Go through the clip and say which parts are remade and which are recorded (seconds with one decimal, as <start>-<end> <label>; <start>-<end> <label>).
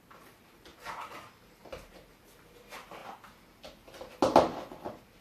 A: 0.0-0.7 recorded; 0.7-2.4 remade; 2.4-5.2 recorded